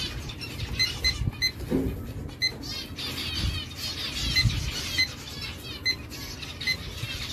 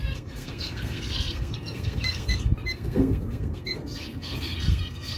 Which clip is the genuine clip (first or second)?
first